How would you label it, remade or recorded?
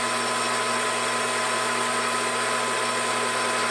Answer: recorded